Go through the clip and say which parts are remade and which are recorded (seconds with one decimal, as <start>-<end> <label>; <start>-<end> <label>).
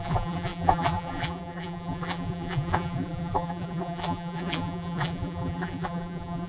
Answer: 0.0-6.5 remade